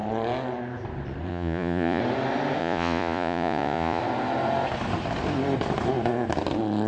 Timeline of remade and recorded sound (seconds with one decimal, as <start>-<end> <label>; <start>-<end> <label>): 0.0-1.3 recorded; 1.3-2.0 remade; 2.0-2.6 recorded; 2.6-4.0 remade; 4.0-6.9 recorded